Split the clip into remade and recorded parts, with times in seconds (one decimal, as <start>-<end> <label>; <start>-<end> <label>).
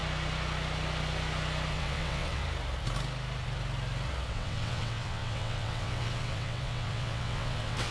0.0-1.7 recorded; 1.7-2.4 remade; 2.4-4.3 recorded; 4.3-7.9 remade